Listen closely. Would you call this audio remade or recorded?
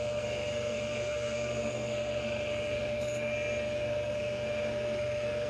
remade